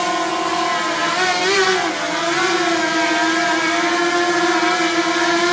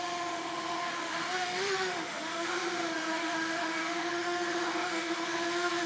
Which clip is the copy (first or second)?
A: second